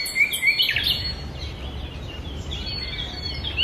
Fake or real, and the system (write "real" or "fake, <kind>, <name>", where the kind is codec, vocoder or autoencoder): real